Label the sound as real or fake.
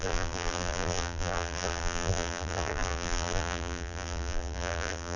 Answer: fake